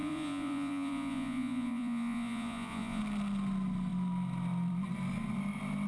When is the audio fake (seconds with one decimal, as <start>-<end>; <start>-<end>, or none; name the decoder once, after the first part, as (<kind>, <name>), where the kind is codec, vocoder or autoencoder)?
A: 0.0-3.0 (vocoder, Vocos)

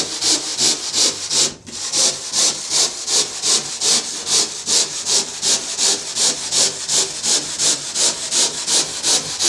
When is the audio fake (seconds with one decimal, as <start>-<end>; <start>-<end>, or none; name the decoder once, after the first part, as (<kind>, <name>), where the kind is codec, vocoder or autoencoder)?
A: 0.0-9.5 (vocoder, BigVGAN v2)

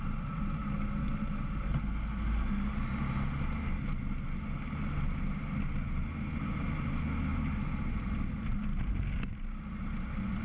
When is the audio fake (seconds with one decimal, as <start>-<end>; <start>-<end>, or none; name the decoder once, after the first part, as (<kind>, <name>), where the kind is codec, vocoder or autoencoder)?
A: none